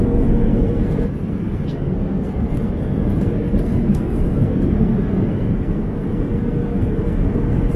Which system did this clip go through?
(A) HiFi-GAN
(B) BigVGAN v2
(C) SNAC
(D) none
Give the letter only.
C